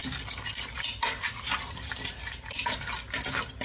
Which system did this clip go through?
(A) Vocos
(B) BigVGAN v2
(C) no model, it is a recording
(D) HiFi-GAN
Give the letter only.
C